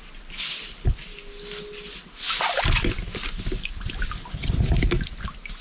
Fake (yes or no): no